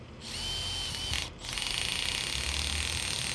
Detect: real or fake real